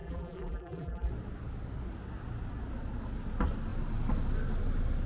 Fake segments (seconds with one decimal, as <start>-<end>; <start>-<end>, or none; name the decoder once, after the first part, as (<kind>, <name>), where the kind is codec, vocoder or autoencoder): 0.0-1.1 (vocoder, BigVGAN v2)